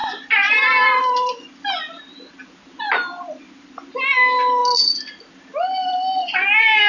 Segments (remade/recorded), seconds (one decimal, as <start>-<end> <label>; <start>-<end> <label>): 0.0-2.0 remade; 2.0-6.9 recorded